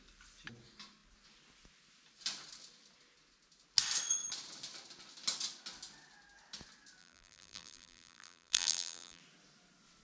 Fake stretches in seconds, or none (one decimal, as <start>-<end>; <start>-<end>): 7.0-9.2